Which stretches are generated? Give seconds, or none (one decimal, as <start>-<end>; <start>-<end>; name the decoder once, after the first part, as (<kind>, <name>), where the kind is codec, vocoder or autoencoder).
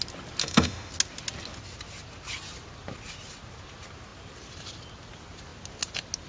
0.4-0.9 (autoencoder, DAC-VAE)